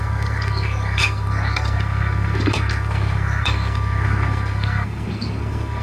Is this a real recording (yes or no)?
no